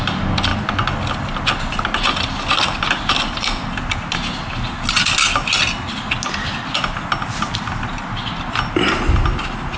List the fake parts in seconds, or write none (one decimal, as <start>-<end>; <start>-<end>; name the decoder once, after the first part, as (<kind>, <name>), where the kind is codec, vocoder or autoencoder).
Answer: none